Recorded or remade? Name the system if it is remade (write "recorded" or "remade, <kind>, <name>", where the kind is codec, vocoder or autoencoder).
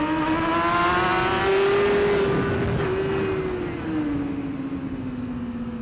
recorded